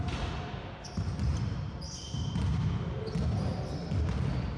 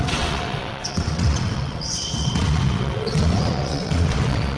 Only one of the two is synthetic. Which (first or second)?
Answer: second